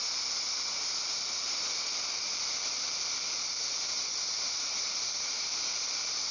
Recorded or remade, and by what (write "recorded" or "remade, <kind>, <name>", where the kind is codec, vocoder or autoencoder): recorded